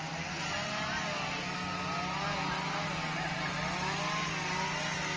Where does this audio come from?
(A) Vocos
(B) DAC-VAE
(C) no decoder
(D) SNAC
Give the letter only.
C